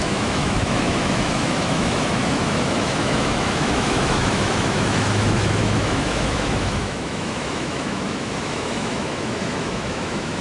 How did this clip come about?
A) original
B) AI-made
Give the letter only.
B